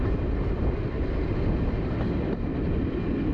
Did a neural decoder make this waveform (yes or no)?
no